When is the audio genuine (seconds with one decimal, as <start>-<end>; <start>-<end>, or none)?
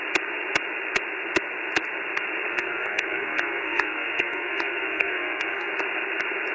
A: 0.0-2.5; 5.7-6.5